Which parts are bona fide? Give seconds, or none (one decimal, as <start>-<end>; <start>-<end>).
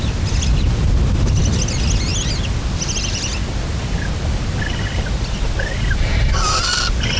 0.0-7.2